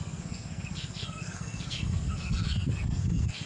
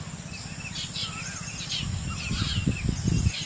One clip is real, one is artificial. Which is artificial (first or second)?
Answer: first